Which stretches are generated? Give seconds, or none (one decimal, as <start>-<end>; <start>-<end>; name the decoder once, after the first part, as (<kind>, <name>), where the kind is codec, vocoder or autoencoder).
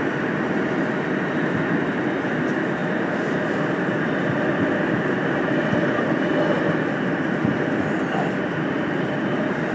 none